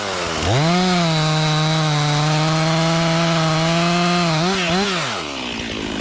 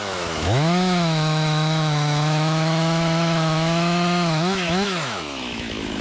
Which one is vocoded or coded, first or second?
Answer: second